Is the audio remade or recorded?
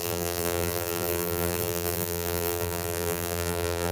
remade